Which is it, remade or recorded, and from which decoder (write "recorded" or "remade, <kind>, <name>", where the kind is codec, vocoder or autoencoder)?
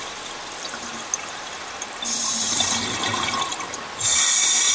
recorded